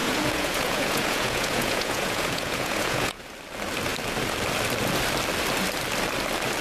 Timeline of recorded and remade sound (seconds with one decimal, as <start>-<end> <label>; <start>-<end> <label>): 0.0-3.2 remade; 3.2-6.6 recorded